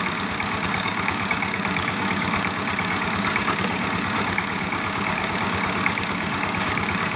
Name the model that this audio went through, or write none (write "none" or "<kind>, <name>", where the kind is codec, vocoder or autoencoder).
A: codec, DAC